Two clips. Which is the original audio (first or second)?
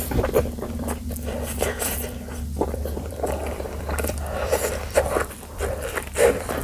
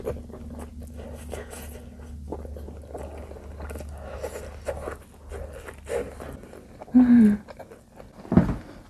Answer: second